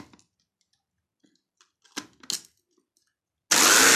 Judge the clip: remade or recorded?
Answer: recorded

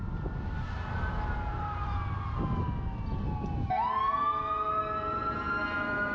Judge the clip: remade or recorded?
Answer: recorded